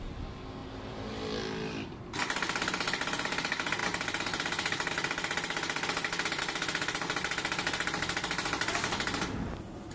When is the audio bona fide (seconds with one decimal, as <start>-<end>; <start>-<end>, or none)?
0.0-9.9